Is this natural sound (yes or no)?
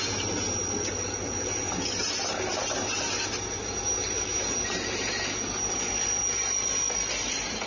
yes